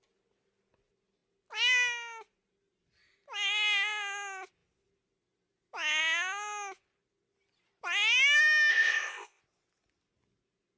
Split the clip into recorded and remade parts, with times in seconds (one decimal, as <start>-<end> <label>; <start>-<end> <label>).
0.0-8.7 recorded; 8.7-9.4 remade; 9.4-10.8 recorded